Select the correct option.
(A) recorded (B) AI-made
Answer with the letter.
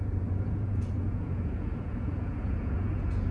B